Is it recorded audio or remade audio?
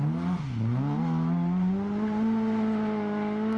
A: recorded